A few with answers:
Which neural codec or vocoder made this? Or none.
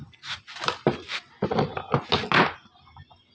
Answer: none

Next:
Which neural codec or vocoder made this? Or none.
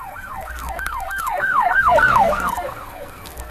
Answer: codec, SNAC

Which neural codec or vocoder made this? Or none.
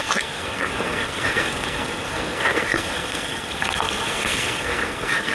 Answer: codec, SNAC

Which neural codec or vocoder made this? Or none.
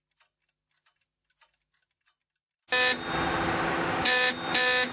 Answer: none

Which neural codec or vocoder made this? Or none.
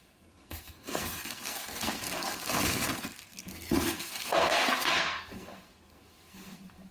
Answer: codec, SNAC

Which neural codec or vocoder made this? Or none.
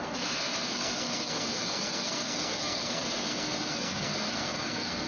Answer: codec, SNAC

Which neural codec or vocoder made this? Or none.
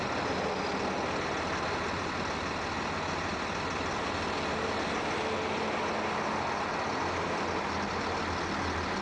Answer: none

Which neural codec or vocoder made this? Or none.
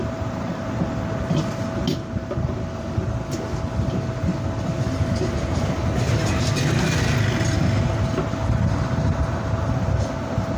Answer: none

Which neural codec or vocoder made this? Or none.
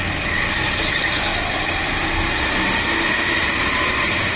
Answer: none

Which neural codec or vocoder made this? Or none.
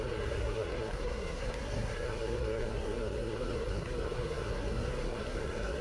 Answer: codec, SNAC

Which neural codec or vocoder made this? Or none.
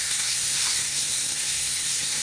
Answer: codec, SNAC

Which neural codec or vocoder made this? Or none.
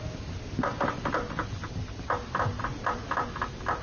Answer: none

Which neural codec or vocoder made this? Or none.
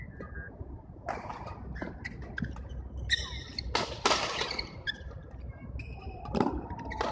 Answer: none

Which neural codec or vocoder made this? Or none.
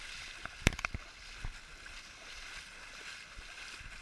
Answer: none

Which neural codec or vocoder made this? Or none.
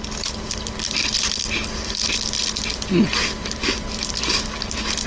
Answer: none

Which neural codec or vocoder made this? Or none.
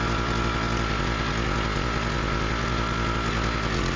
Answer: none